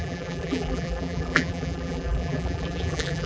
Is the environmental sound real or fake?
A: fake